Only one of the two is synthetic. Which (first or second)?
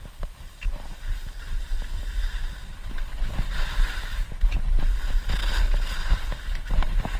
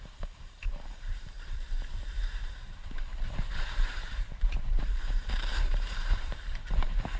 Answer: second